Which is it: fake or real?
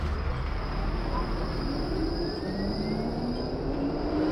real